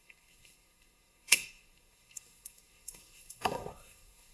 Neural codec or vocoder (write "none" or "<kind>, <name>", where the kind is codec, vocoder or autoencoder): codec, SNAC